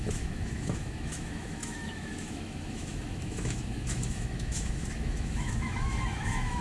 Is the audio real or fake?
fake